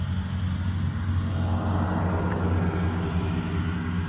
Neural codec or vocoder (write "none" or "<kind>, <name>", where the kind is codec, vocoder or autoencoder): none